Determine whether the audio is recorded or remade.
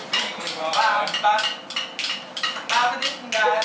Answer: recorded